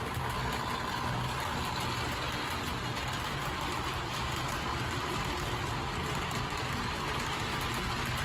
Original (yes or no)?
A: yes